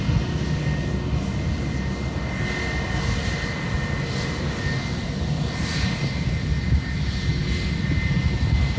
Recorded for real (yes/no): yes